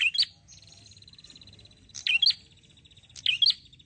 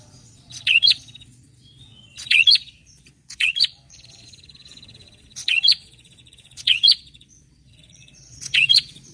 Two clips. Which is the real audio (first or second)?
first